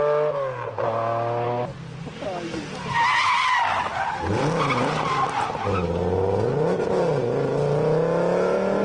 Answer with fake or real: real